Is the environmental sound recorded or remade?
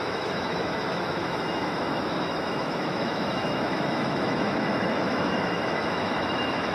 remade